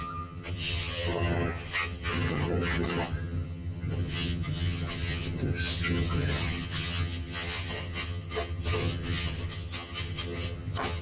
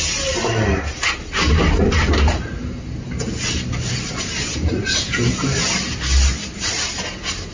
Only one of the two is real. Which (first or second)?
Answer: second